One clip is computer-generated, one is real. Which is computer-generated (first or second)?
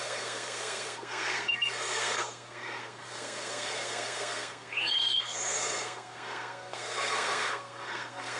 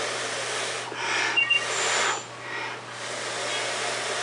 first